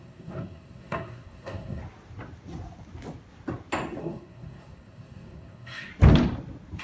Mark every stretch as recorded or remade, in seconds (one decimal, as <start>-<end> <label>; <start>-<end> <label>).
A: 0.0-1.8 remade; 1.8-4.0 recorded; 4.0-5.9 remade; 5.9-6.8 recorded